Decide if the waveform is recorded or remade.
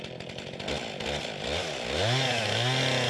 recorded